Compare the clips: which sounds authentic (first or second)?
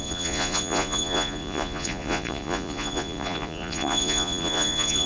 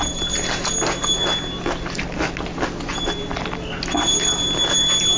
second